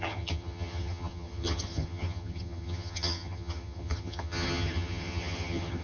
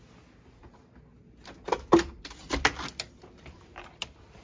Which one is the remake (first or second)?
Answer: first